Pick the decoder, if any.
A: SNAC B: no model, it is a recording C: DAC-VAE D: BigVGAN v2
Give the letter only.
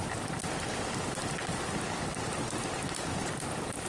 B